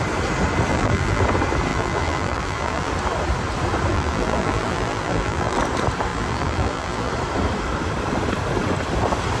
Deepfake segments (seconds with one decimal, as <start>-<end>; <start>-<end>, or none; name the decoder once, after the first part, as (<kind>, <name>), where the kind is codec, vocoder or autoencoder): 0.7-1.2 (vocoder, BigVGAN v2); 1.7-2.9; 3.9-5.6; 6.1-7.1